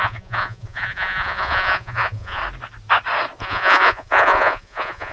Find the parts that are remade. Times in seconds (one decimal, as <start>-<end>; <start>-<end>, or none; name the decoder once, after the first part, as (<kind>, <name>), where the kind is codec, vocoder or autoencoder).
0.0-2.4 (vocoder, Vocos); 3.4-5.1